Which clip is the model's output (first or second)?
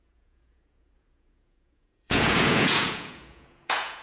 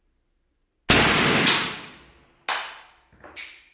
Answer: first